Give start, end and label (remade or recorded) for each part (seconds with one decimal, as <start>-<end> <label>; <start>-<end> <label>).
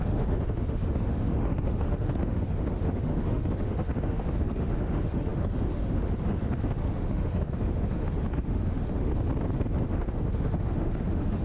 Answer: 0.0-9.1 remade; 9.1-9.8 recorded; 9.8-11.4 remade